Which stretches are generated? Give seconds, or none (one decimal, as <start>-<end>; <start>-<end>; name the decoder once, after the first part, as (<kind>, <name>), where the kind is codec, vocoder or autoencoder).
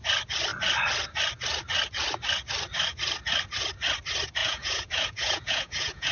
4.4-6.1 (vocoder, Vocos)